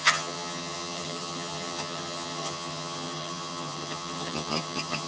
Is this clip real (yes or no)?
no